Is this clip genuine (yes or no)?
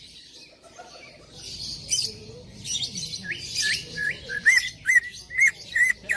no